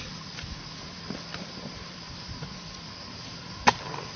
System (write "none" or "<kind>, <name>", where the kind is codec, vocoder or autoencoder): none